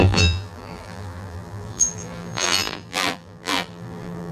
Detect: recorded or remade remade